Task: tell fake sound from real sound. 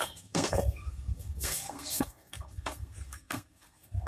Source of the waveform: fake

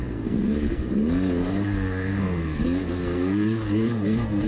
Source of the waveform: fake